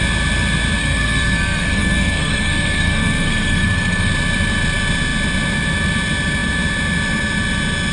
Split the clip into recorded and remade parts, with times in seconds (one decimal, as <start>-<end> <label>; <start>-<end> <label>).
0.0-0.8 recorded; 0.8-4.1 remade; 4.1-7.9 recorded